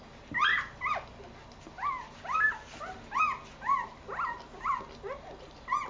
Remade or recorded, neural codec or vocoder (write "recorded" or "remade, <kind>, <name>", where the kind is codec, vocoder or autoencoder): recorded